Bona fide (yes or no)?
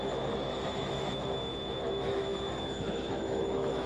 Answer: no